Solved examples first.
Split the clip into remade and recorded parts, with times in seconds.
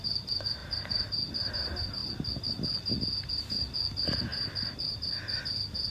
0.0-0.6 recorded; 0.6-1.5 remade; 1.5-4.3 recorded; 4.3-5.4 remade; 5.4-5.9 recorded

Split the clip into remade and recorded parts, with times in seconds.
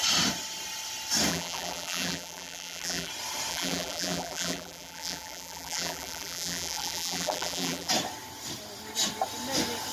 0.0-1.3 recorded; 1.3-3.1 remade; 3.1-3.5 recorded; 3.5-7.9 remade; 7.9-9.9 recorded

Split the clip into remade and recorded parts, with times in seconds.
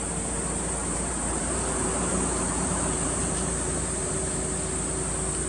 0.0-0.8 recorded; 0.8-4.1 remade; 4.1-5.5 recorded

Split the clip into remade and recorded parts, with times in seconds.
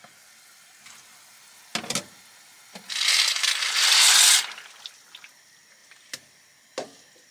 0.0-7.3 recorded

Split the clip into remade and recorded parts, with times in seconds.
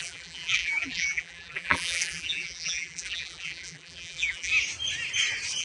0.0-4.5 remade; 4.5-5.6 recorded